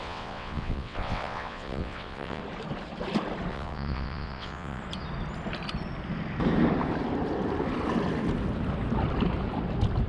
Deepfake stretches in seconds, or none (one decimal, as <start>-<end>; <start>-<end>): 0.0-2.4; 3.5-4.8